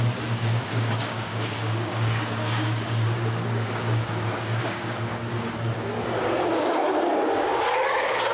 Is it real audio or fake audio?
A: fake